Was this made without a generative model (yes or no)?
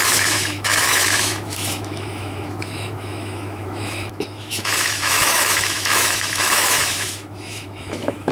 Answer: no